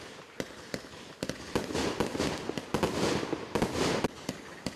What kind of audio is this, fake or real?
real